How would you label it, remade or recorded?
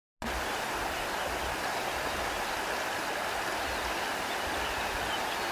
recorded